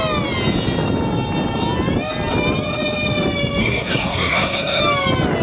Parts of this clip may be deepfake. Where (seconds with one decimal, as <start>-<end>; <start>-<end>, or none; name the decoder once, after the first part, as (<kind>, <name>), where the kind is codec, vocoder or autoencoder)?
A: 3.6-4.8 (codec, SNAC)